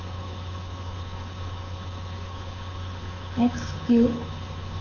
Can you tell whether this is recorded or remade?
remade